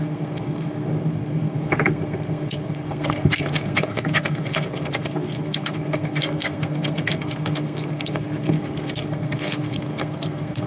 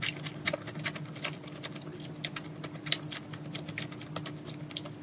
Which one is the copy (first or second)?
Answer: first